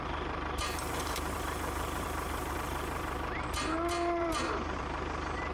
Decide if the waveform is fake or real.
fake